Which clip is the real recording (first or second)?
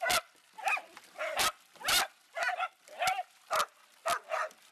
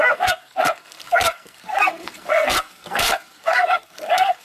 first